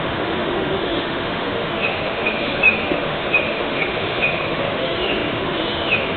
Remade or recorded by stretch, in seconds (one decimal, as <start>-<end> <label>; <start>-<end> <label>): 0.0-6.2 remade